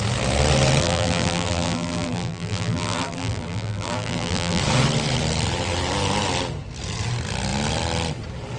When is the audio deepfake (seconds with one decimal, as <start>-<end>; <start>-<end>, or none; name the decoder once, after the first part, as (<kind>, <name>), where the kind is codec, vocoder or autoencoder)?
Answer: 0.8-4.6 (vocoder, BigVGAN v2)